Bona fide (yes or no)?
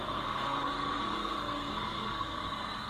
no